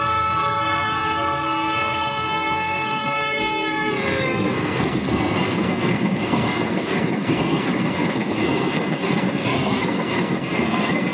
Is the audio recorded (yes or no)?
no